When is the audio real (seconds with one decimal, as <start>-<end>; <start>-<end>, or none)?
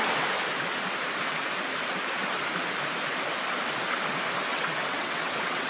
0.0-4.5